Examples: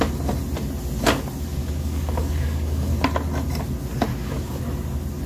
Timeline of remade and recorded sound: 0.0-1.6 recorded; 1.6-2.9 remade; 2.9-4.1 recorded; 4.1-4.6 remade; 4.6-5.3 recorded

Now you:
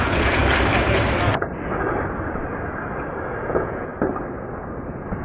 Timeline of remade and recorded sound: 0.0-0.4 remade; 0.4-3.5 recorded; 3.5-3.9 remade; 3.9-5.2 recorded

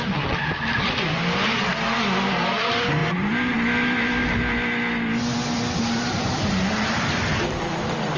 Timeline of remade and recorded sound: 0.0-8.2 recorded

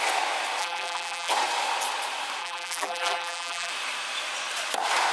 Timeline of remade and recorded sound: 0.0-0.6 recorded; 0.6-1.3 remade; 1.3-2.4 recorded; 2.4-3.7 remade; 3.7-5.1 recorded

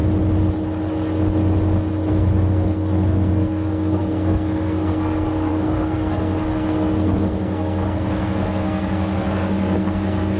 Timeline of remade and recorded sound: 0.0-2.1 recorded; 2.1-10.4 remade

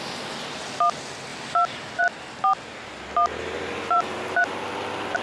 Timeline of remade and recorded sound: 0.0-1.3 recorded; 1.3-2.0 remade; 2.0-3.3 recorded; 3.3-4.4 remade; 4.4-5.2 recorded

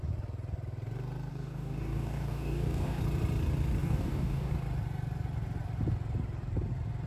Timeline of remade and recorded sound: 0.0-1.3 recorded; 1.3-3.0 remade; 3.0-3.8 recorded; 3.8-4.5 remade; 4.5-7.1 recorded